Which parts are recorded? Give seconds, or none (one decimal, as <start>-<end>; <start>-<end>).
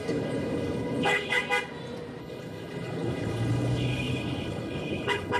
1.4-2.2